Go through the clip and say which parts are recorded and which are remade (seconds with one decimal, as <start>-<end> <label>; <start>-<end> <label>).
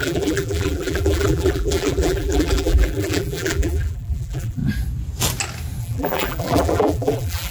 0.0-4.6 remade; 4.6-5.8 recorded; 5.8-7.5 remade